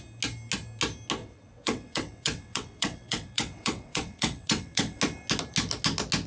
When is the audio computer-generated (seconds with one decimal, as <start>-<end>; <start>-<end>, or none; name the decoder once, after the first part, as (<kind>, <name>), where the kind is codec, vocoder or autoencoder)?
1.2-5.0 (vocoder, WaveNeXt)